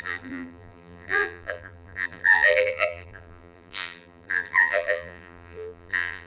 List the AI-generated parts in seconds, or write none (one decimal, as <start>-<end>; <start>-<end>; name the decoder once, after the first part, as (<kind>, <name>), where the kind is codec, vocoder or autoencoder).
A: 0.0-6.3 (vocoder, BigVGAN v2)